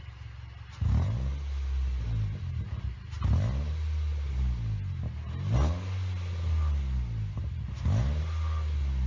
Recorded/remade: recorded